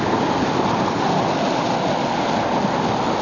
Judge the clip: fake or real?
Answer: real